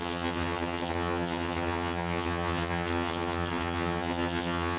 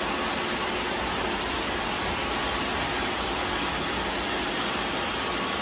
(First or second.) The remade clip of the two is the first